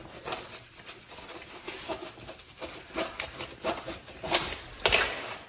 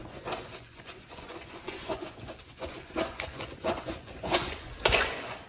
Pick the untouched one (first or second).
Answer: first